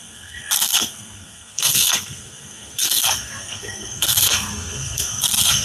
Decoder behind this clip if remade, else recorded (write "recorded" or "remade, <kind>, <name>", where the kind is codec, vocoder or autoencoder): remade, codec, SNAC